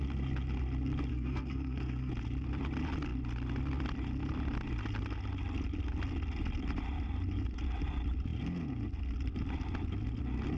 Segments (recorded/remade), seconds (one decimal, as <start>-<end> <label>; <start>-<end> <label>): 0.0-1.1 recorded; 1.1-2.1 remade; 2.1-10.6 recorded